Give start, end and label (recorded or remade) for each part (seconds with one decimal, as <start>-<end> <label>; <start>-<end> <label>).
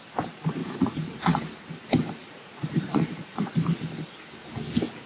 0.0-0.6 recorded; 0.6-1.4 remade; 1.4-2.2 recorded; 2.2-3.5 remade; 3.5-5.1 recorded